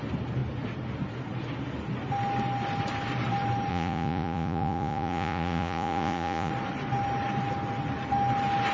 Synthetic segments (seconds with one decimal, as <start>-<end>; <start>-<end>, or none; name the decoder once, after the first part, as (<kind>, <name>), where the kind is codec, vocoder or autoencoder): 3.7-6.5 (vocoder, Vocos)